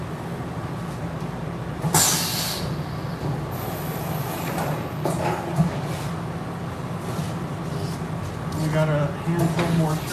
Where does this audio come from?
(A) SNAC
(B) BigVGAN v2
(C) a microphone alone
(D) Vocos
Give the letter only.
C